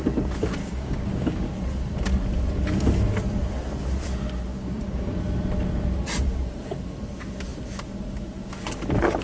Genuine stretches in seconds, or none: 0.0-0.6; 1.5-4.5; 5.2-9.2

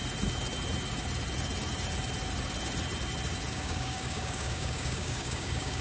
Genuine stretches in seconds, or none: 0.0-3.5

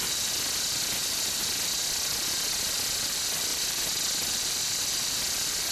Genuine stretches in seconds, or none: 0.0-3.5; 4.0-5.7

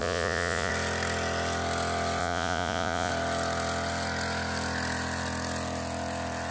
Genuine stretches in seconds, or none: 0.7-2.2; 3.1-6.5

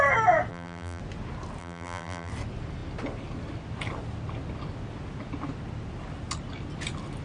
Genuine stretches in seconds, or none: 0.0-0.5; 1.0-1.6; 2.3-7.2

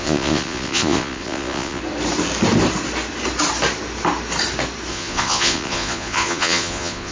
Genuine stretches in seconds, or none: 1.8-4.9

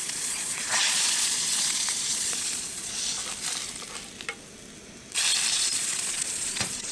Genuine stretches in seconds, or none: 3.2-5.5